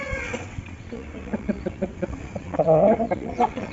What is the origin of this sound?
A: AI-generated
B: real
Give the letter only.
A